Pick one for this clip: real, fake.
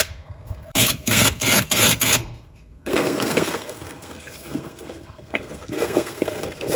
fake